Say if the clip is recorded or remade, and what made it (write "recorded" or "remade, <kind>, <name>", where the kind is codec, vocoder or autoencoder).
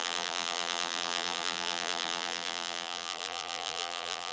remade, vocoder, BigVGAN v2